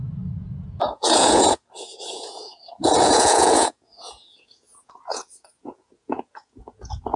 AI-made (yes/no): yes